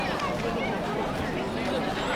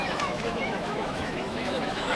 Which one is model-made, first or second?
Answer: second